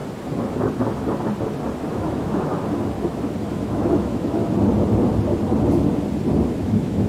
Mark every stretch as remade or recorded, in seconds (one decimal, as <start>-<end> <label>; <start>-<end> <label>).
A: 0.0-1.9 recorded; 1.9-2.5 remade; 2.5-3.5 recorded; 3.5-4.4 remade; 4.4-6.6 recorded; 6.6-7.1 remade